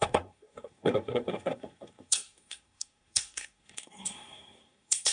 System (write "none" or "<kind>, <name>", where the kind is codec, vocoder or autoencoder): codec, SNAC